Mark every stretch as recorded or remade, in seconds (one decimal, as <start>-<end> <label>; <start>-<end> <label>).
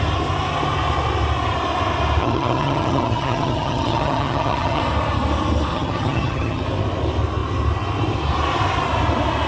0.0-2.2 recorded; 2.2-4.8 remade; 4.8-5.7 recorded; 5.7-6.6 remade; 6.6-9.5 recorded